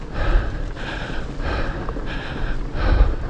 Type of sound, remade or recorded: remade